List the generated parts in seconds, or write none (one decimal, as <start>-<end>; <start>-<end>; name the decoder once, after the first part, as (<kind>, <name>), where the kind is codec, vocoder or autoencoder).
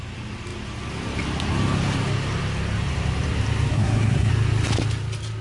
3.7-4.3 (codec, SNAC)